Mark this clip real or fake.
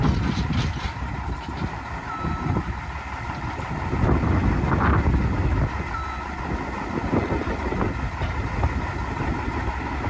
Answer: real